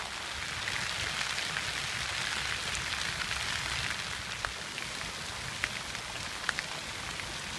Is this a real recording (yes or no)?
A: yes